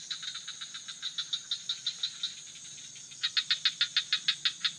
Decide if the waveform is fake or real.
real